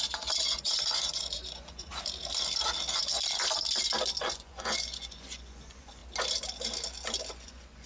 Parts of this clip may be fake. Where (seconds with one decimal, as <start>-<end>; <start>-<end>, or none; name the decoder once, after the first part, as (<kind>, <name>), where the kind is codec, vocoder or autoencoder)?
0.0-1.9 (vocoder, Vocos); 4.2-6.0; 7.3-7.9